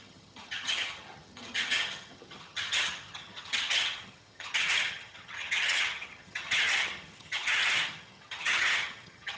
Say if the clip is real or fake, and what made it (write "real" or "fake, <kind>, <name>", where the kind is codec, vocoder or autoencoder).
fake, vocoder, HiFi-GAN